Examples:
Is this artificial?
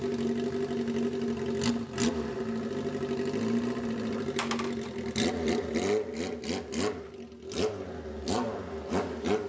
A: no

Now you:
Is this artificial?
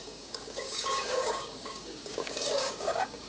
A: yes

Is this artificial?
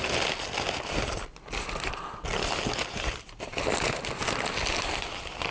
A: no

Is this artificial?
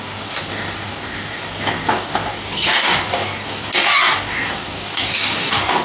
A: yes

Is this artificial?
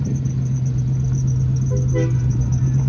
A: no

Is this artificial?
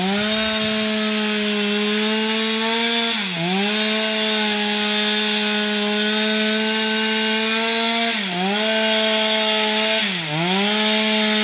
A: no